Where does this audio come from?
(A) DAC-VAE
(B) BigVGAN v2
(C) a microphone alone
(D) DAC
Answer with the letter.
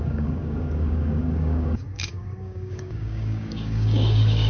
D